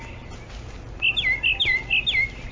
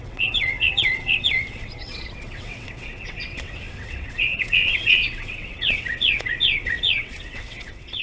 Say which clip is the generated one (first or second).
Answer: second